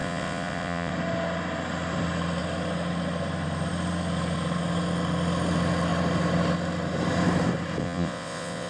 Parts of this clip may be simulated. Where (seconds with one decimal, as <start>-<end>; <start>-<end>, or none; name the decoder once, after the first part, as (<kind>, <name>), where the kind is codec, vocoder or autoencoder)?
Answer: 0.0-0.9 (vocoder, WaveNeXt); 7.8-8.7